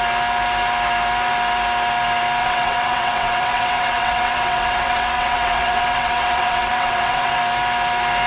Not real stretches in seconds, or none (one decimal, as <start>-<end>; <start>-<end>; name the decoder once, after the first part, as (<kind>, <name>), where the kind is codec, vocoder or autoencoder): 2.4-7.4 (vocoder, WaveNeXt)